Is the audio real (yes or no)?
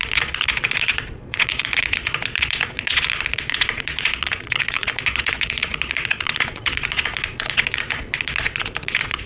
no